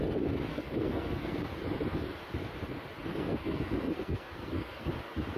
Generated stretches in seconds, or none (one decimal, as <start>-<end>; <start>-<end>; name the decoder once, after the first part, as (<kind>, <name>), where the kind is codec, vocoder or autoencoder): 0.5-1.5 (codec, SNAC); 3.1-4.9